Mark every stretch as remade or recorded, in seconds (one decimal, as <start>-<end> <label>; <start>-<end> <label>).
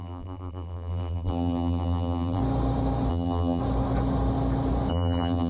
0.0-2.4 remade; 2.4-3.1 recorded; 3.1-3.6 remade; 3.6-4.9 recorded; 4.9-5.5 remade